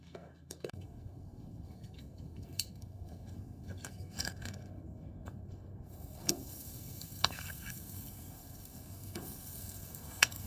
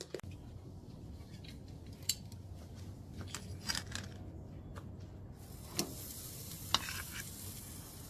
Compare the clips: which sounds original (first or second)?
second